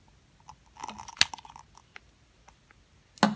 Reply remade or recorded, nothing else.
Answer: recorded